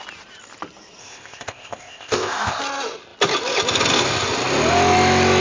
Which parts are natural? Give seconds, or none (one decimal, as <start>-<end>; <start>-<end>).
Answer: 0.0-1.0; 2.6-5.4